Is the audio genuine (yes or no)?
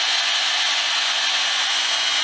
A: no